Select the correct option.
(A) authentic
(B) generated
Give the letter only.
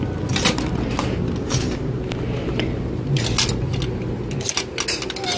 A